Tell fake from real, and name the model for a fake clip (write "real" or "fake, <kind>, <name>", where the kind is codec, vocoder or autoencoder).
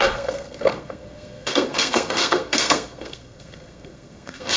fake, codec, SNAC